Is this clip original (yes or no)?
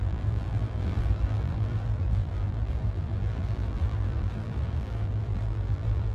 no